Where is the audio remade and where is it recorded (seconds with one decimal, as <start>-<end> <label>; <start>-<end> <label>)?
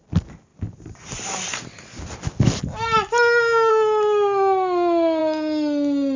0.0-6.2 recorded